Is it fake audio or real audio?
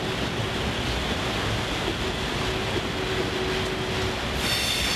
real